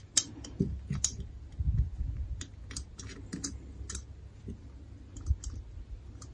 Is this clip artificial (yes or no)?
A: no